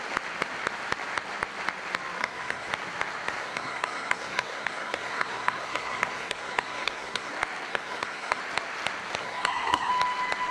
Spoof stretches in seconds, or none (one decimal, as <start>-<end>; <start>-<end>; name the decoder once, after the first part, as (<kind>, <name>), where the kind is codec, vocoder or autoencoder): 2.2-2.7 (codec, SNAC); 3.4-7.3; 7.7-8.4; 9.2-9.9